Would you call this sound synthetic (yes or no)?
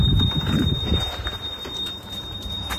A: yes